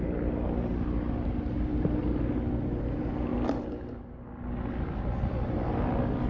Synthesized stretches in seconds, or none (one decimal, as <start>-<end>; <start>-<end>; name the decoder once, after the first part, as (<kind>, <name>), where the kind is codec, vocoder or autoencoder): none